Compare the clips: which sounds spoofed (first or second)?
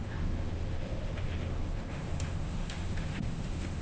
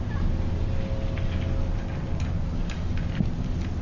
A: first